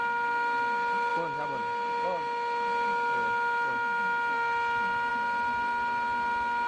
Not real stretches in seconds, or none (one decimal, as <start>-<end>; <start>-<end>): none